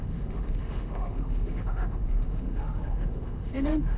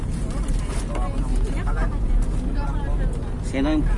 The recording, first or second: second